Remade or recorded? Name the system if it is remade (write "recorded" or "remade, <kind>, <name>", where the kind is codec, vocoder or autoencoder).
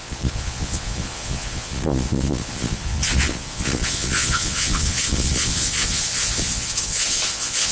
remade, vocoder, Vocos